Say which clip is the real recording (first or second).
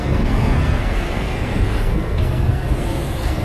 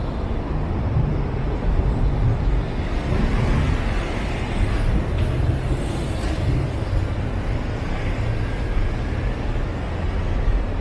second